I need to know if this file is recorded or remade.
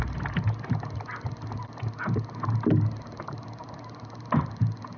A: recorded